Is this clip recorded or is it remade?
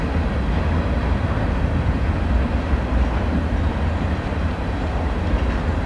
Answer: recorded